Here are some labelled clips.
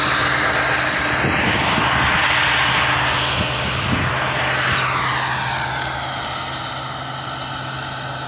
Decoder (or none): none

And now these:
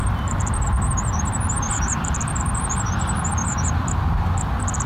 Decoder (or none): vocoder, BigVGAN v2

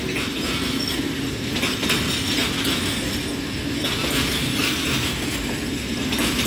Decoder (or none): none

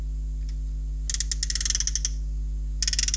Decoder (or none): none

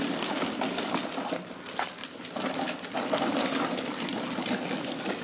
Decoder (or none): none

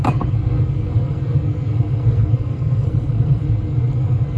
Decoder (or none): codec, SNAC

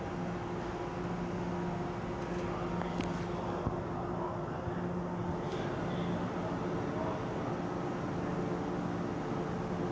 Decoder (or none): none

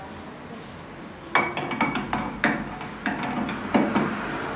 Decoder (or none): none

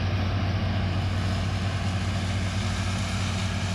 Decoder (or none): none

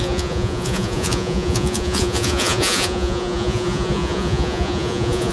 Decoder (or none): vocoder, Vocos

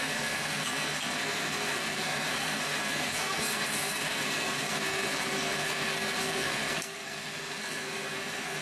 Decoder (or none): codec, SNAC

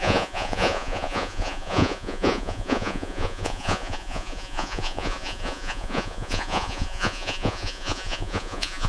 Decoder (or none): vocoder, Vocos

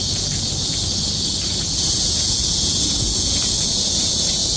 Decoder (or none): vocoder, Vocos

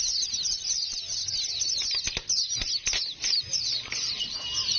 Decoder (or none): none